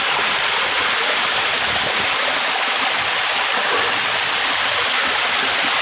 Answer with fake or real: real